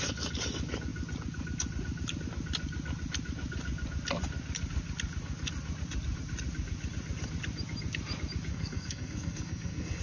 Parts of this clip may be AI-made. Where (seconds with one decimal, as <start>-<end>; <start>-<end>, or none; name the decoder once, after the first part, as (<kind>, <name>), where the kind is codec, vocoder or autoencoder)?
8.5-10.0 (codec, SNAC)